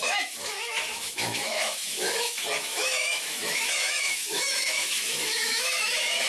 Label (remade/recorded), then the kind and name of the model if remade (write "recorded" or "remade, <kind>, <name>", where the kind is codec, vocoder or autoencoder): remade, autoencoder, DAC-VAE